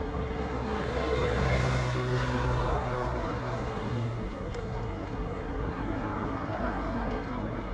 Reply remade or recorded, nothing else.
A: remade